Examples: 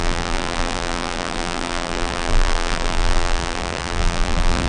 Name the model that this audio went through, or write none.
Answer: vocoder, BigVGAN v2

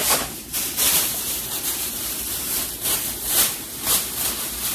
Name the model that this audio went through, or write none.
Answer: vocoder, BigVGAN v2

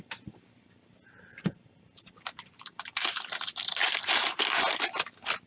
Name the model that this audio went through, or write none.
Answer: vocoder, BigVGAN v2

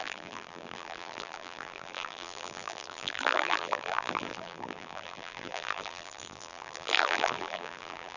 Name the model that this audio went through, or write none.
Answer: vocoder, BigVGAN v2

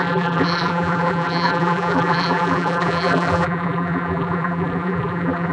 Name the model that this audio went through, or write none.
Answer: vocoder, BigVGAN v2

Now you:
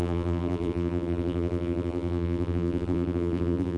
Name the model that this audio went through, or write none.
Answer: vocoder, BigVGAN v2